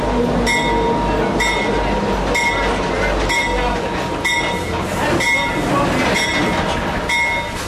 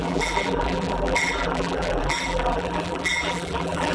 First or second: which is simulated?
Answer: second